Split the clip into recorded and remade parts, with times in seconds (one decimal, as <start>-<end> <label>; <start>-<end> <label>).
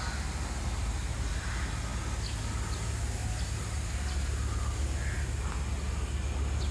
0.0-6.7 recorded